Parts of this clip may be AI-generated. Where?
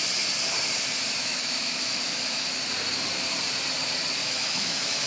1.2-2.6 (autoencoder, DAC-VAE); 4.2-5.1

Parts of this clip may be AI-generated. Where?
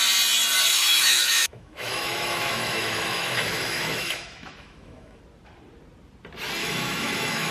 0.7-5.2 (autoencoder, DAC-VAE); 6.6-7.5